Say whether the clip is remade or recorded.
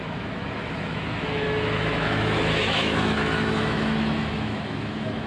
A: remade